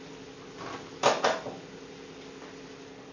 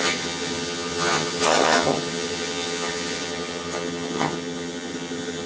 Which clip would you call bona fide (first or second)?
first